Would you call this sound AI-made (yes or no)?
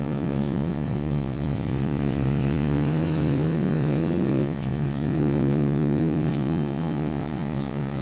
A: yes